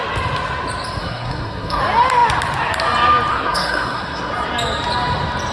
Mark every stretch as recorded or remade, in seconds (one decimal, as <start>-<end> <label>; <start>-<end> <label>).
0.0-1.0 recorded; 1.0-1.8 remade; 1.8-3.3 recorded; 3.3-4.3 remade; 4.3-5.5 recorded